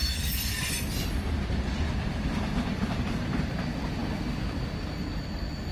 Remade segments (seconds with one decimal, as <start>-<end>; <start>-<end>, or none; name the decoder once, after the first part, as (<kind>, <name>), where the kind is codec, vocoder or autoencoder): none